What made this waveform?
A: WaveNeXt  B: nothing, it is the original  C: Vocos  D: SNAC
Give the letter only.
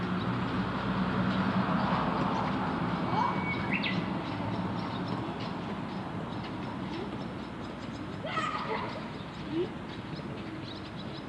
B